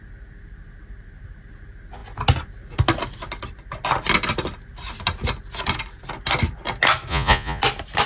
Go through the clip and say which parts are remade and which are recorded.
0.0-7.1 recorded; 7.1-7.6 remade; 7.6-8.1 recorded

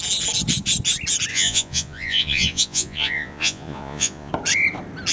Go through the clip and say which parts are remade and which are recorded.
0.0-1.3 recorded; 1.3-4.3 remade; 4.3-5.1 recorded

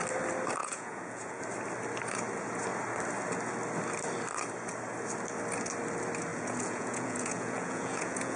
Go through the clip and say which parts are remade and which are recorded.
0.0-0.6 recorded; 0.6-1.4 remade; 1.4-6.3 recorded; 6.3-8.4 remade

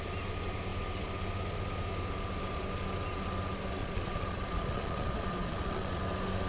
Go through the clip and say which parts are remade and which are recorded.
0.0-3.8 recorded; 3.8-6.0 remade; 6.0-6.5 recorded